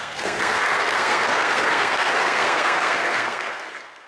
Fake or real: fake